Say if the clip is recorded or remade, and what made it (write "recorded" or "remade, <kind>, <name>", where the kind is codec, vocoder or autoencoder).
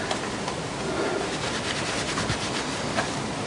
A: recorded